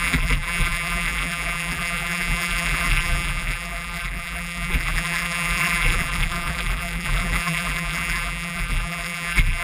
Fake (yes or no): yes